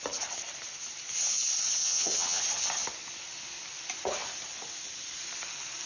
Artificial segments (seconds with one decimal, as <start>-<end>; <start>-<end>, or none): 1.8-2.4